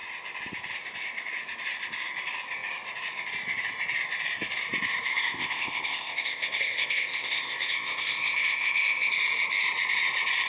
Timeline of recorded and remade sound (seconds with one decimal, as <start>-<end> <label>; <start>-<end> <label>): 0.0-5.1 recorded; 5.1-9.1 remade; 9.1-10.5 recorded